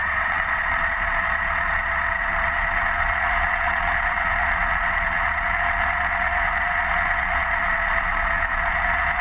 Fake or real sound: fake